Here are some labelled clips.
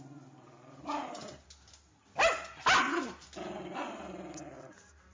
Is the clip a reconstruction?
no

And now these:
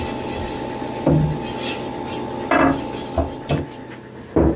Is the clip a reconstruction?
no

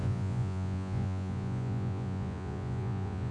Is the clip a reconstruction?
yes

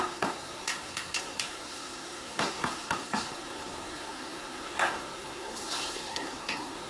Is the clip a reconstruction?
yes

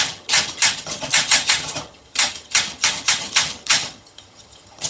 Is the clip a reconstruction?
yes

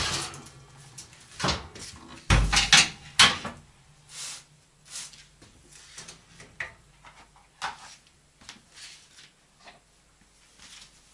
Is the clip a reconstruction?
no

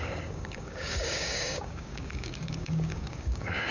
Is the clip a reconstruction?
yes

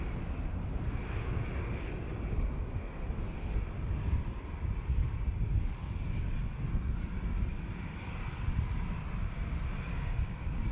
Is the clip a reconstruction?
no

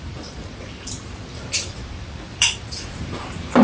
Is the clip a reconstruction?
yes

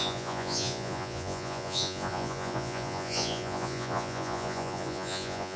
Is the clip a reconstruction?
yes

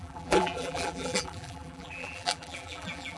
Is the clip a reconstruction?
yes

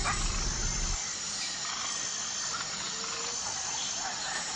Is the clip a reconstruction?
no